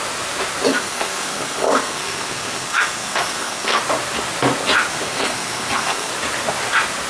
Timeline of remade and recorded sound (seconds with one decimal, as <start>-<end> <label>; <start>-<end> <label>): 0.0-0.7 recorded; 0.7-3.8 remade; 3.8-4.9 recorded; 4.9-6.1 remade; 6.1-7.1 recorded

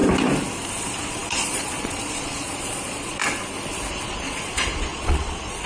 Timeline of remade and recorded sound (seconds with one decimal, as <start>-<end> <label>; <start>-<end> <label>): 0.0-0.7 recorded; 0.7-3.2 remade; 3.2-3.9 recorded; 3.9-5.7 remade